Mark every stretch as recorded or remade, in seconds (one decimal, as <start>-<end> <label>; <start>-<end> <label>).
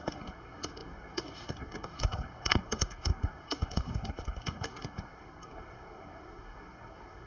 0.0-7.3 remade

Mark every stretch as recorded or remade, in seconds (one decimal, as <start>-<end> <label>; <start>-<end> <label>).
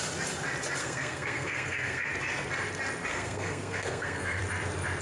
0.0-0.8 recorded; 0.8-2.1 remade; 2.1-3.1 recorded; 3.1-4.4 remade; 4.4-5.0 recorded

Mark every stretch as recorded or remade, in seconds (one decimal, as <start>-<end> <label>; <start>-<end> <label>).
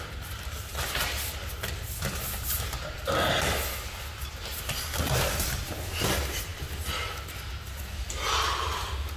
0.0-9.2 recorded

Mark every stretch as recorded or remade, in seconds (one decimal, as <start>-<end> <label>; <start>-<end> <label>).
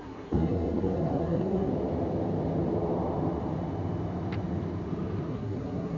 0.0-1.7 remade; 1.7-5.3 recorded; 5.3-6.0 remade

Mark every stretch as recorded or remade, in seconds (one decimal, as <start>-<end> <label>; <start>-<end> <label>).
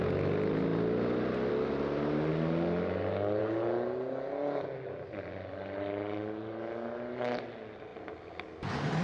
0.0-9.0 recorded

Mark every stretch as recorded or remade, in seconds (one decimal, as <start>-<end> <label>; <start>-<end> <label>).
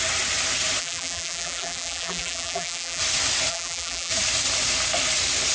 0.0-0.8 recorded; 0.8-3.0 remade; 3.0-3.5 recorded; 3.5-4.1 remade; 4.1-5.5 recorded